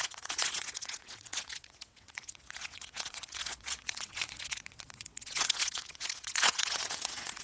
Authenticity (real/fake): fake